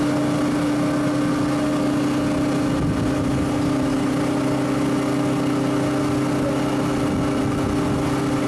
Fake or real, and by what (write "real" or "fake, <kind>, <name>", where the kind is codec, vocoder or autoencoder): real